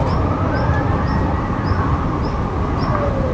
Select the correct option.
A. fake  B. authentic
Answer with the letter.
B